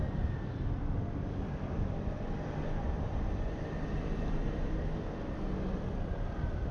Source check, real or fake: fake